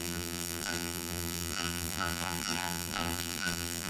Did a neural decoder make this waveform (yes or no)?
yes